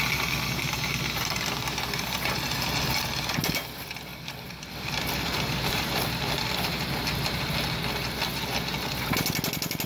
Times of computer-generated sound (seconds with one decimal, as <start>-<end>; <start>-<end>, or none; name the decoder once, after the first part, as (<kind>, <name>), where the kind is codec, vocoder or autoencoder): 4.1-6.9 (vocoder, BigVGAN v2)